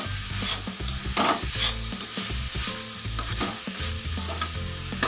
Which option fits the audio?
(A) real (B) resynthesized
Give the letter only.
A